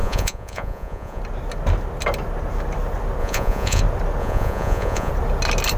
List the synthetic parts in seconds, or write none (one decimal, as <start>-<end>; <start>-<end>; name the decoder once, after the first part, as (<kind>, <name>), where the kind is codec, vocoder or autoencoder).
0.0-1.2 (vocoder, Vocos); 3.2-3.8; 4.2-5.1